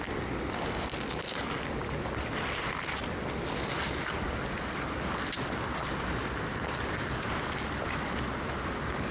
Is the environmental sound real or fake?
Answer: real